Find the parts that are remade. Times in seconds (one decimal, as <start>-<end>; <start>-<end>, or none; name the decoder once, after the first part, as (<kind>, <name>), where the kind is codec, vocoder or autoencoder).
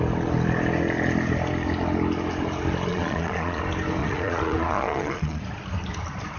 2.9-3.6 (vocoder, Vocos); 4.0-5.4